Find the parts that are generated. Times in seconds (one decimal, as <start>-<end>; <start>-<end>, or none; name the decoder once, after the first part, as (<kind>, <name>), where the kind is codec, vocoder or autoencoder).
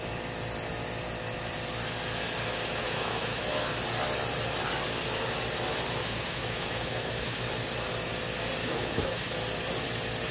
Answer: 2.8-3.4 (autoencoder, DAC-VAE); 6.0-7.4; 8.6-9.3